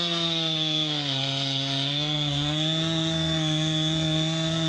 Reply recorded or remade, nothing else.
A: remade